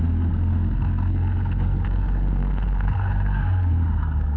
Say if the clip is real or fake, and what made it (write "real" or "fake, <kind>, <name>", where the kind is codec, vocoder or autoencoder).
fake, codec, SNAC